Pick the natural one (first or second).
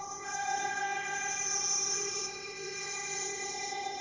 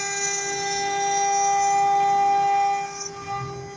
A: second